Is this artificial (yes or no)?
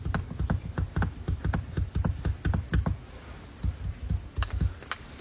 no